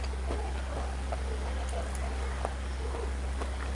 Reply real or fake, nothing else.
real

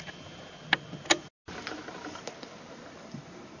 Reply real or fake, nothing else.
real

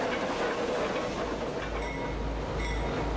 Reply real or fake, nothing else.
real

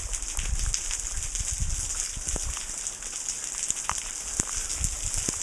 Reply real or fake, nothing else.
real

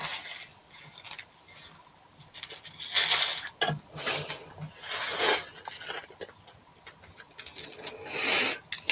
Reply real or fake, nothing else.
real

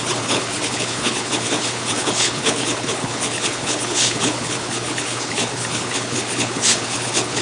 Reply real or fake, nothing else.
fake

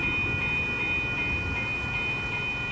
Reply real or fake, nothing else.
real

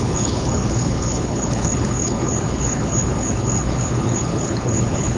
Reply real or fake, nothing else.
fake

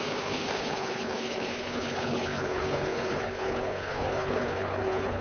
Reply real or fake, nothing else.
fake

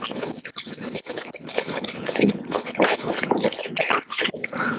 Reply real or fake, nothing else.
fake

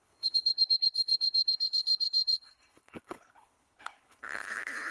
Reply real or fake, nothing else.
fake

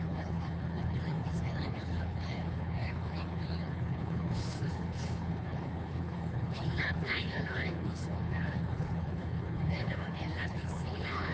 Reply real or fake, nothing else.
fake